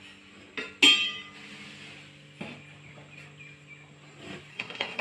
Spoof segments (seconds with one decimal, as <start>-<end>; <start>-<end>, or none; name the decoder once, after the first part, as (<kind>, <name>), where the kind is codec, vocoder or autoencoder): 4.5-5.0 (codec, SNAC)